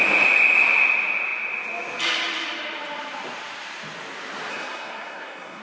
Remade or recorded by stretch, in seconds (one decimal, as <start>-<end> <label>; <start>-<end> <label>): 0.0-4.5 recorded; 4.5-5.6 remade